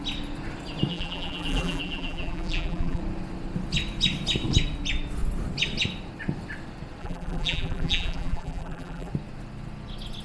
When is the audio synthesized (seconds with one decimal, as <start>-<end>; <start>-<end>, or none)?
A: 0.9-3.0; 7.0-9.1